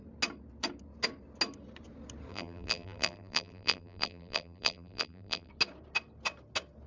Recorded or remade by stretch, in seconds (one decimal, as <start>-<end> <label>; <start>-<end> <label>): 0.0-2.3 recorded; 2.3-5.5 remade; 5.5-6.9 recorded